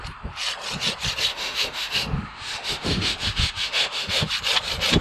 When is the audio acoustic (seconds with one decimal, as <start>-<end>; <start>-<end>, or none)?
0.0-1.3; 4.3-5.0

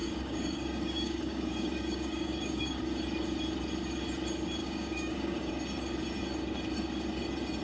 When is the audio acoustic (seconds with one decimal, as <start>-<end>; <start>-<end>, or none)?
2.8-4.6; 5.5-7.6

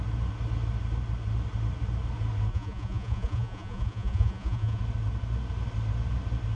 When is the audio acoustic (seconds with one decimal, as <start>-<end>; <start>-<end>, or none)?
0.0-2.5; 4.8-6.6

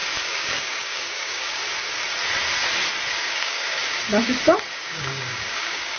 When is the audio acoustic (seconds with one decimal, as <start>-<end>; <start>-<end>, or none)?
1.6-3.1; 3.8-4.7

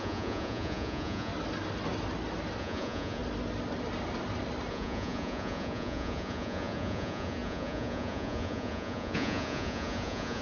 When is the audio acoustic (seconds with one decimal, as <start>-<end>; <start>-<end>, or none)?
1.3-2.6; 3.2-4.7

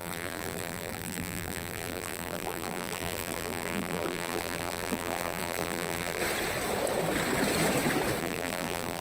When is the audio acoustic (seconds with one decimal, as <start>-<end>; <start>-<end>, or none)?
6.2-8.2

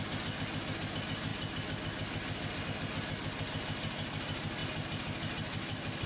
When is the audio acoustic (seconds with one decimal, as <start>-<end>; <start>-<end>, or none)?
0.0-6.1

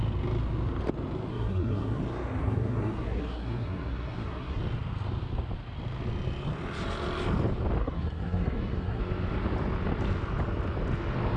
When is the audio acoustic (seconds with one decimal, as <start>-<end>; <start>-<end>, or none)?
0.0-1.3; 2.0-2.4; 4.6-7.8; 9.0-11.4